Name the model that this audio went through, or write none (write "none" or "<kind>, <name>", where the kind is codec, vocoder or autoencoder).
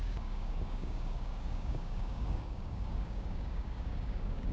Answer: codec, DAC